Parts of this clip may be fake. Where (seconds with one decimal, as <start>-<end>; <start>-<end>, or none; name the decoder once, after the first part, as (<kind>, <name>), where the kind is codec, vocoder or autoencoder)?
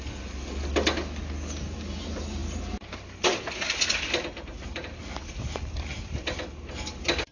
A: none